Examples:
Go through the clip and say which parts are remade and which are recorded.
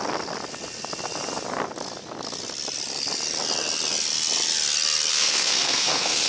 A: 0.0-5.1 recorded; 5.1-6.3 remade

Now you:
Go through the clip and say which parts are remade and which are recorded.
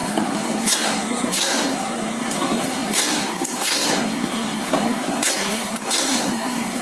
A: 0.0-6.8 remade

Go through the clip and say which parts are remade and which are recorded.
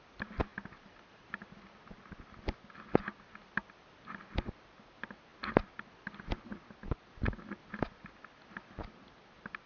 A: 0.0-9.7 recorded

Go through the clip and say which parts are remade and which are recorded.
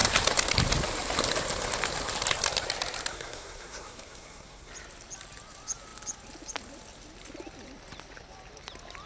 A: 0.0-3.1 recorded; 3.1-4.7 remade; 4.7-9.1 recorded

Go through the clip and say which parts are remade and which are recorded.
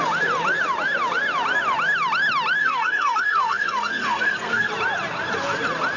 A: 0.0-2.6 recorded; 2.6-4.7 remade; 4.7-6.0 recorded